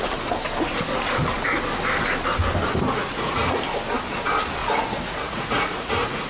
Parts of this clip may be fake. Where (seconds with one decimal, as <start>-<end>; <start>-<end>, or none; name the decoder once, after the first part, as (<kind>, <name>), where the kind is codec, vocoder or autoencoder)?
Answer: 3.0-3.6 (vocoder, Vocos); 4.6-6.3